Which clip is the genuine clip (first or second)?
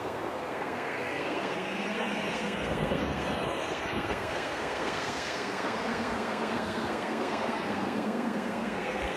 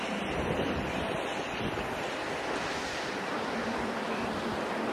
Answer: second